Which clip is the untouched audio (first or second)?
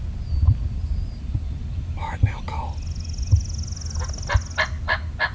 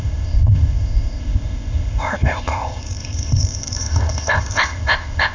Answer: first